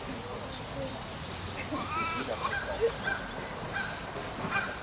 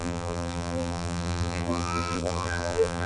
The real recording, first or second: first